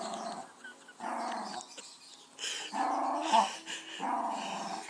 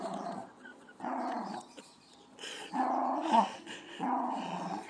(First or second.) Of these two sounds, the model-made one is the second